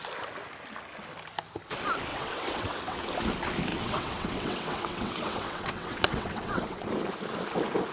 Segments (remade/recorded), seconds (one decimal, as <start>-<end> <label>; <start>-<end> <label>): 0.0-2.1 recorded; 2.1-3.0 remade; 3.0-3.7 recorded; 3.7-6.9 remade; 6.9-7.9 recorded